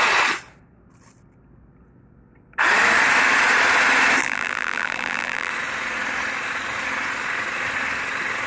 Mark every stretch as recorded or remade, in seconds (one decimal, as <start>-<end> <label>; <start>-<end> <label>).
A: 0.0-4.2 recorded; 4.2-5.5 remade; 5.5-8.5 recorded